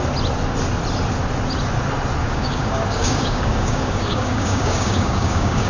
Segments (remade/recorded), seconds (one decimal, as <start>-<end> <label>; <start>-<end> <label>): 0.0-2.2 recorded; 2.2-5.7 remade